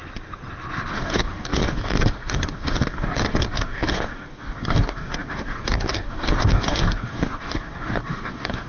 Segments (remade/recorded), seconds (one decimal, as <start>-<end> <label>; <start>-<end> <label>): 0.0-0.9 recorded; 0.9-8.7 remade